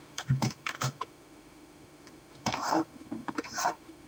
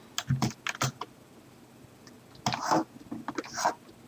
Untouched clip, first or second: second